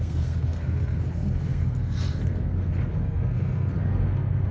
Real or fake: fake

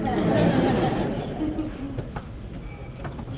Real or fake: real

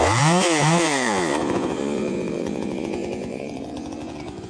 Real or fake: fake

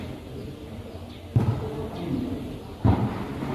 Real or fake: real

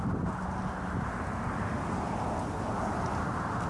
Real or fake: real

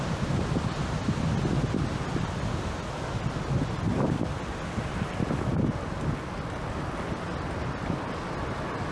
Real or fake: real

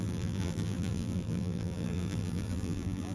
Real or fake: fake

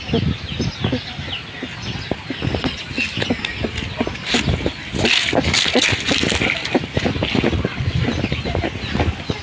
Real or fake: real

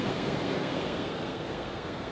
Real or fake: fake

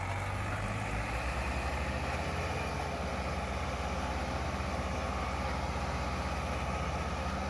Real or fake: real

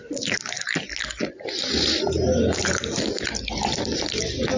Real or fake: real